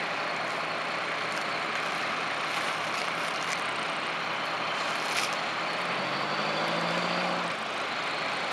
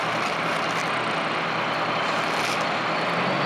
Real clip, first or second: second